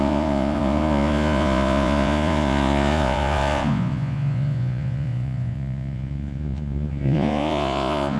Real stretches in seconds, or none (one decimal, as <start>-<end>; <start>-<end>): none